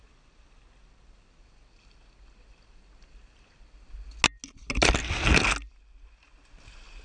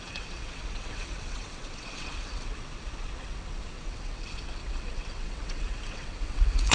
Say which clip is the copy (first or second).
second